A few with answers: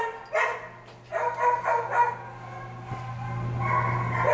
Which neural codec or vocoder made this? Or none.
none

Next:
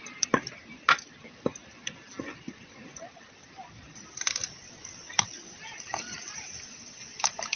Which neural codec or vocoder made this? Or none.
none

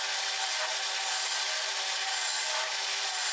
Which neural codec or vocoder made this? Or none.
none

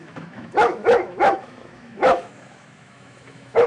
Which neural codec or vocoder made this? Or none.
autoencoder, DAC-VAE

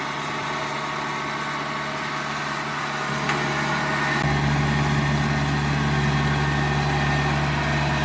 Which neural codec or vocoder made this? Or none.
none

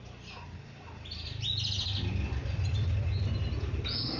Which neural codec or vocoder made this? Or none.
none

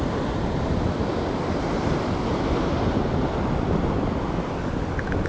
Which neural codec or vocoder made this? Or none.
none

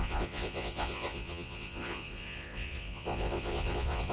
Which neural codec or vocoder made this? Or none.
vocoder, Vocos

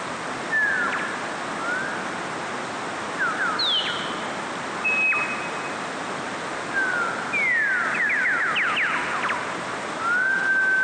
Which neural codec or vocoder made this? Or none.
none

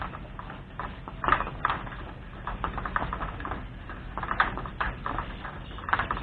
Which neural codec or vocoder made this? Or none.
none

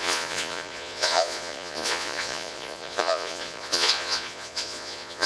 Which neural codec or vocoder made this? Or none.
vocoder, Vocos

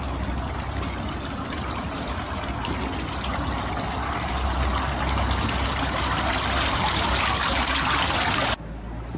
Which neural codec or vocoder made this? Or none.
none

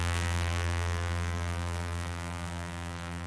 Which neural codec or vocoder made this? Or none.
vocoder, BigVGAN v2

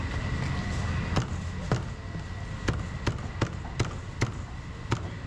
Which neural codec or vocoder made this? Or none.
none